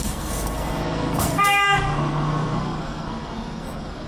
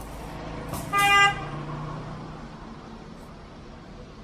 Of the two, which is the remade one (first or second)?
first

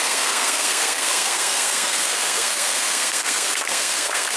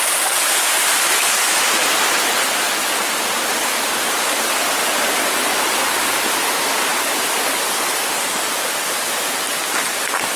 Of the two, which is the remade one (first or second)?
first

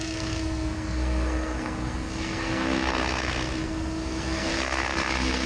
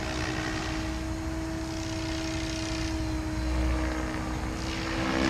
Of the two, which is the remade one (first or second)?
first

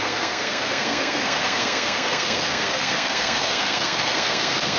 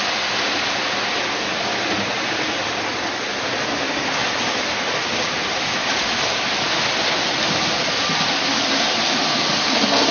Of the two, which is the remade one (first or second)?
first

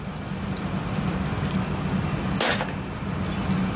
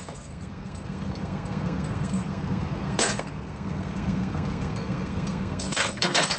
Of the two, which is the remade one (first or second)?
second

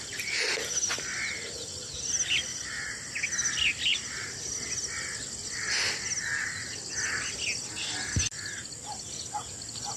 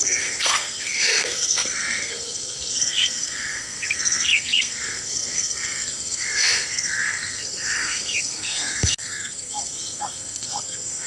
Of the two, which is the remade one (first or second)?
second